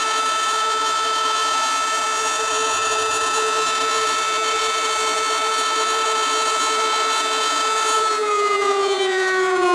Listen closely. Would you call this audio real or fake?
fake